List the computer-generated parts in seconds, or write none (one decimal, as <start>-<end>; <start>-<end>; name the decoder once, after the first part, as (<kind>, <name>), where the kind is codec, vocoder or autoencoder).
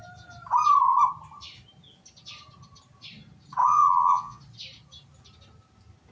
3.6-4.4 (vocoder, Vocos)